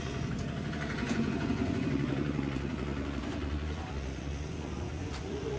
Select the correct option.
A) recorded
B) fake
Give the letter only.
B